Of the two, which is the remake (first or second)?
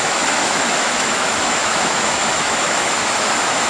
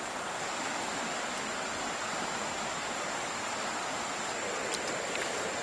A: first